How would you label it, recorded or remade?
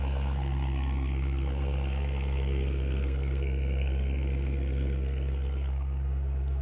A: remade